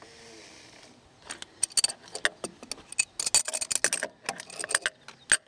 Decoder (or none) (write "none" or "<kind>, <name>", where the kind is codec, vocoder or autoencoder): none